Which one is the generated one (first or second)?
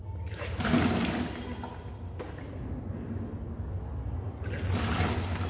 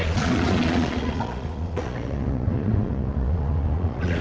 second